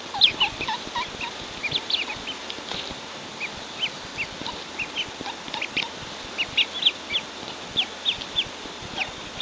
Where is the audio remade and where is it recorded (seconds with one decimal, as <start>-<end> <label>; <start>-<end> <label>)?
0.0-9.4 recorded